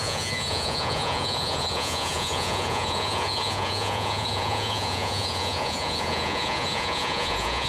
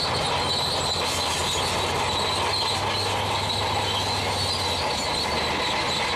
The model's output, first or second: first